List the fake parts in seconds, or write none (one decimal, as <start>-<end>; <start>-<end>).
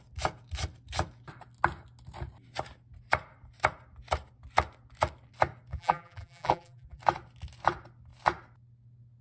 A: 5.7-7.0